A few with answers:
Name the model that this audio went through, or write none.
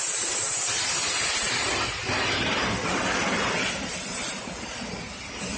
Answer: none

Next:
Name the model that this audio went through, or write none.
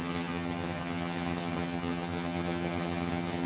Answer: vocoder, HiFi-GAN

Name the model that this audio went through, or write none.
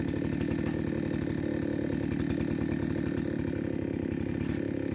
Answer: none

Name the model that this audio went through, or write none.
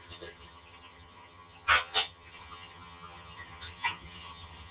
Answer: vocoder, HiFi-GAN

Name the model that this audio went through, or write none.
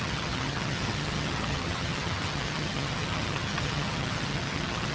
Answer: vocoder, HiFi-GAN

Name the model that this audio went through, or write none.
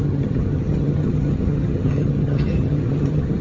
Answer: vocoder, HiFi-GAN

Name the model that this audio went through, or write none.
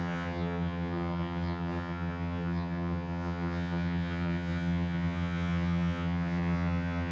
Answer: vocoder, HiFi-GAN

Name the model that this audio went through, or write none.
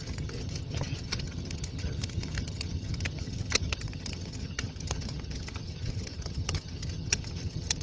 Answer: vocoder, HiFi-GAN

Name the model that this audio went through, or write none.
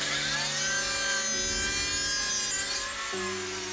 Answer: none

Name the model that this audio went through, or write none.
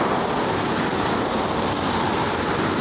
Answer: none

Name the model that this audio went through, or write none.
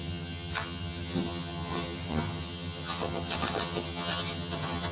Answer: vocoder, HiFi-GAN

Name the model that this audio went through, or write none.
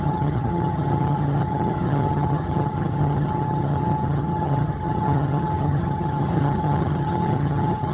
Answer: vocoder, HiFi-GAN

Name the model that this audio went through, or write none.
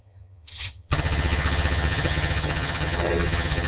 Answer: vocoder, HiFi-GAN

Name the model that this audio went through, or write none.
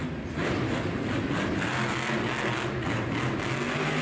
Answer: none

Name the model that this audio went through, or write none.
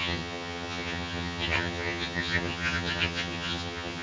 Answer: vocoder, HiFi-GAN